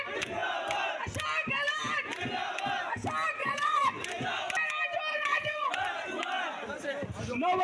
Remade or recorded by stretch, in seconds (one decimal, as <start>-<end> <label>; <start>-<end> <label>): 0.0-3.4 recorded; 3.4-3.9 remade; 3.9-5.1 recorded; 5.1-5.7 remade; 5.7-7.6 recorded